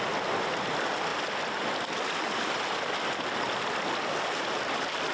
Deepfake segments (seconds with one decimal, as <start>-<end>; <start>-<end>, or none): none